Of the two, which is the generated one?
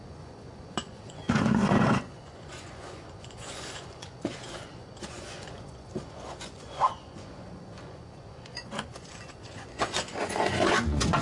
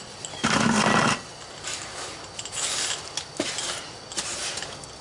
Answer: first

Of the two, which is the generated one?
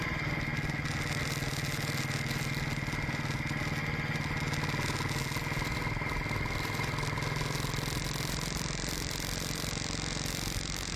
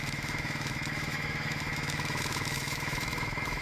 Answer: second